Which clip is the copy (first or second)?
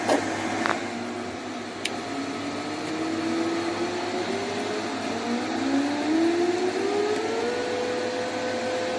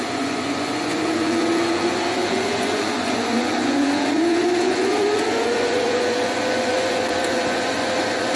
second